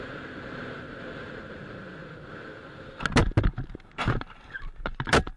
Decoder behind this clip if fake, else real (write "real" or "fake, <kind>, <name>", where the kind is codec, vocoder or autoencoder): real